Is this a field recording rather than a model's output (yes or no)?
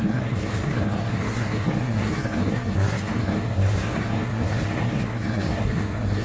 no